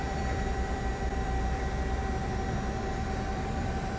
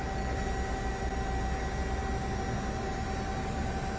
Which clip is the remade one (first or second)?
first